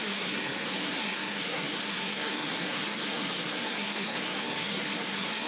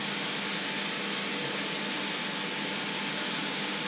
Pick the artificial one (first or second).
first